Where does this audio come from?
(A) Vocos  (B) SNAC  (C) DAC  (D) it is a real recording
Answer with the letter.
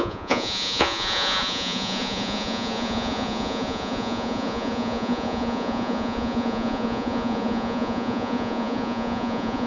A